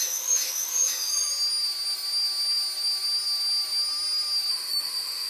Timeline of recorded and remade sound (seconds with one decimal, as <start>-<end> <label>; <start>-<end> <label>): 0.0-1.3 remade; 1.3-4.5 recorded; 4.5-5.3 remade